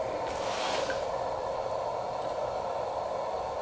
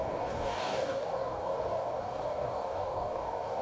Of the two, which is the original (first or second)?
first